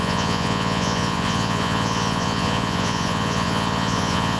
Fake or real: fake